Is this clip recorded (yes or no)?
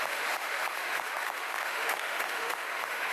no